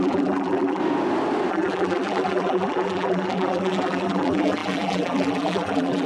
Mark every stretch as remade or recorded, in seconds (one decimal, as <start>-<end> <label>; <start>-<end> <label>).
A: 0.0-0.8 remade; 0.8-1.5 recorded; 1.5-6.1 remade